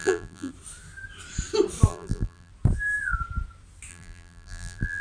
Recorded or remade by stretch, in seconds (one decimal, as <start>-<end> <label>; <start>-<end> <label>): 0.0-0.5 remade; 0.5-1.9 recorded; 1.9-2.5 remade; 2.5-3.9 recorded; 3.9-5.0 remade